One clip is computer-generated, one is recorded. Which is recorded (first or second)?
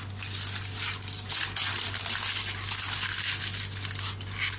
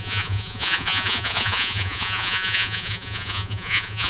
first